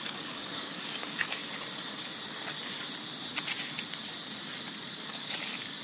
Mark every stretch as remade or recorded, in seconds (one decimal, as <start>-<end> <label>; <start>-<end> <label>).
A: 0.0-1.4 remade; 1.4-4.9 recorded; 4.9-5.8 remade